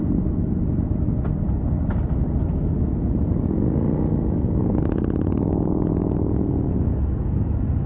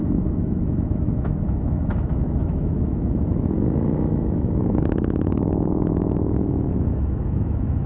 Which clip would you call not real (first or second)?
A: second